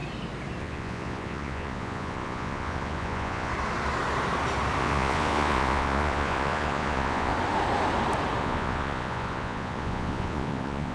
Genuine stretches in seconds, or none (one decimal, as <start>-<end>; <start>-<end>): 0.0-0.6; 3.5-4.8; 7.3-8.4